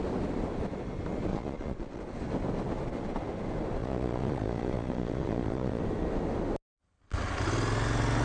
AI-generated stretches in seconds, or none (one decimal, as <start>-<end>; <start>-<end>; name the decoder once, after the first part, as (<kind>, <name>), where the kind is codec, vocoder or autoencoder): 1.3-2.0 (vocoder, Vocos); 3.8-5.8